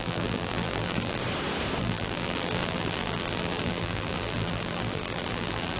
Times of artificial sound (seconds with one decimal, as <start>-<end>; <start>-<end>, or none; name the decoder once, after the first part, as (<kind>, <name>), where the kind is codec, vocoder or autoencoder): 0.0-1.2 (vocoder, BigVGAN v2); 1.8-5.8